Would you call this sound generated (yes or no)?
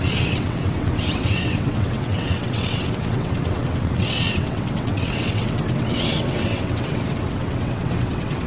yes